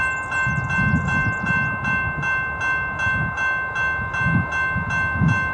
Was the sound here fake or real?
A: real